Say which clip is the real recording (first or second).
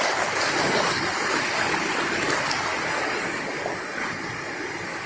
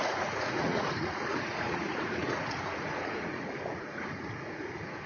first